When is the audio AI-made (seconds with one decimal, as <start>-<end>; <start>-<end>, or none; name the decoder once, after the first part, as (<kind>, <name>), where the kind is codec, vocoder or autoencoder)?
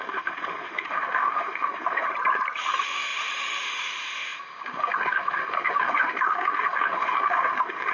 0.0-2.1 (autoencoder, DAC-VAE); 2.6-7.9